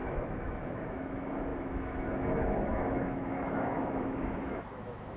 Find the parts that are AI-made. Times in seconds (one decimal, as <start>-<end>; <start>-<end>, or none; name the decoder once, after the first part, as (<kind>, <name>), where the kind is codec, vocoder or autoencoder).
0.0-5.2 (autoencoder, DAC-VAE)